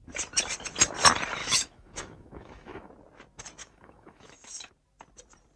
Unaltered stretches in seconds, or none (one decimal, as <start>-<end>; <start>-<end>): 0.0-1.4; 2.9-3.6; 4.7-5.6